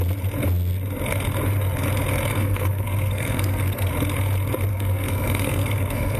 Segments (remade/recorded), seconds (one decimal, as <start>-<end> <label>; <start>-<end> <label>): 0.0-2.3 recorded; 2.3-3.9 remade; 3.9-4.7 recorded; 4.7-6.2 remade